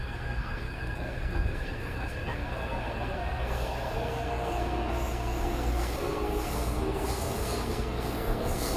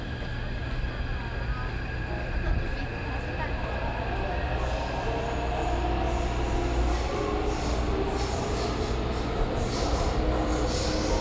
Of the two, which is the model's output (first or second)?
first